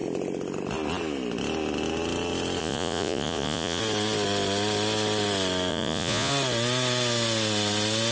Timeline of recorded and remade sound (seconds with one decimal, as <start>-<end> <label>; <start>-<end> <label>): 0.0-2.6 recorded; 2.6-3.8 remade; 3.8-5.7 recorded; 5.7-6.3 remade; 6.3-8.1 recorded

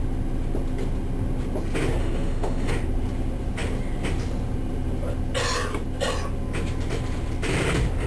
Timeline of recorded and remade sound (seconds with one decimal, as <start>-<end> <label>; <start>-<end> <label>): 0.0-2.0 recorded; 2.0-2.7 remade; 2.7-8.1 recorded

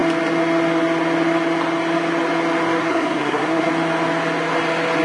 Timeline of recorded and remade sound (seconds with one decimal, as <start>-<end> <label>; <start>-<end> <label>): 0.0-2.8 recorded; 2.8-3.7 remade; 3.7-5.0 recorded

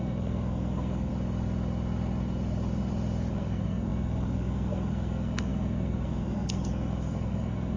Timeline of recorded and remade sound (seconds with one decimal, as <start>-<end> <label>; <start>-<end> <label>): 0.0-1.1 remade; 1.1-3.3 recorded; 3.3-7.8 remade

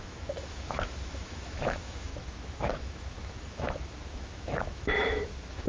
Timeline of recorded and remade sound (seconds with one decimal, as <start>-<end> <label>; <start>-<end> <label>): 0.0-5.7 remade

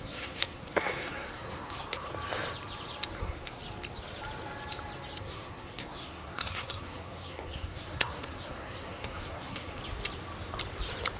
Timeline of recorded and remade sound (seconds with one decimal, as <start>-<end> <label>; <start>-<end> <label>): 0.0-2.1 remade; 2.1-3.2 recorded; 3.2-3.6 remade; 3.6-5.2 recorded; 5.2-9.8 remade; 9.8-11.2 recorded